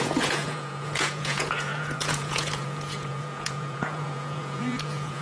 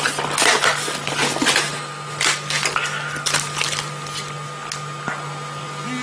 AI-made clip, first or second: first